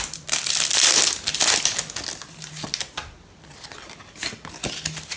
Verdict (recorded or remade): recorded